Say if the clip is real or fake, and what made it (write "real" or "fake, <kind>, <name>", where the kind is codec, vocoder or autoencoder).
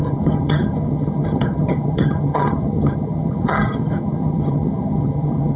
fake, vocoder, HiFi-GAN